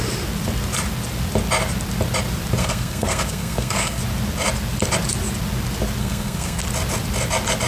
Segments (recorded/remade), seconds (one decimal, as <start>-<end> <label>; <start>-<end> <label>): 0.0-2.6 recorded; 2.6-4.0 remade; 4.0-6.0 recorded; 6.0-6.6 remade; 6.6-7.7 recorded